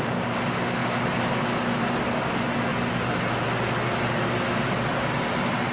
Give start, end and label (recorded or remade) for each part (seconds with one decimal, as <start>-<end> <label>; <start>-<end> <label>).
0.0-5.7 recorded